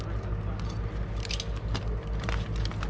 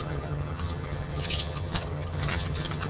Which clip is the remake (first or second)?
second